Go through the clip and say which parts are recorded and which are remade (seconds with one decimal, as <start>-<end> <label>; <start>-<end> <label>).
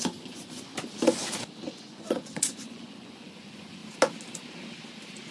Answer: 0.0-0.7 remade; 0.7-1.6 recorded; 1.6-3.8 remade; 3.8-5.3 recorded